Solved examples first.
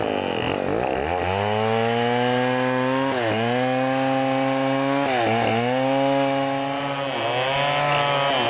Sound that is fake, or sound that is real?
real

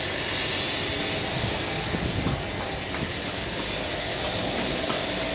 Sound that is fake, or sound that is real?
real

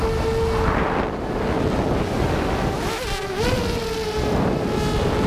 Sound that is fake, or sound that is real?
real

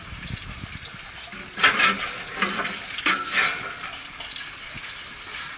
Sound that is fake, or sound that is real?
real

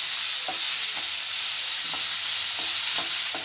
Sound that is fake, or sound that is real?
real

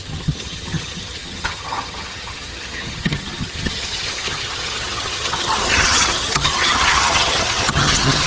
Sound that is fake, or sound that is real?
fake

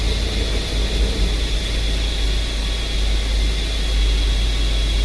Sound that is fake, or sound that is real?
real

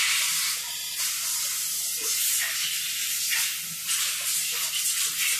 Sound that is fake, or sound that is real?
real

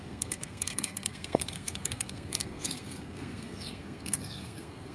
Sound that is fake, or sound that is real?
fake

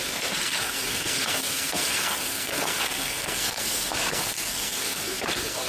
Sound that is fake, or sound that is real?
fake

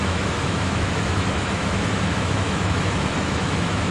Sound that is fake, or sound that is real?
fake